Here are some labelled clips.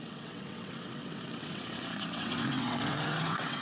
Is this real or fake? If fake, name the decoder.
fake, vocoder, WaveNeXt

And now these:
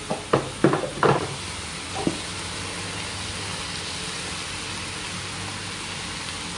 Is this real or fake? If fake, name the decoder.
real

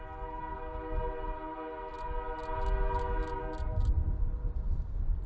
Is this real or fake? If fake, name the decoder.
real